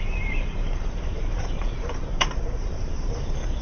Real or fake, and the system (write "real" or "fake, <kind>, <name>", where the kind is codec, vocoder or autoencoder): fake, vocoder, BigVGAN v2